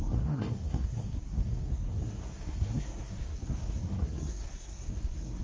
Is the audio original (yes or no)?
no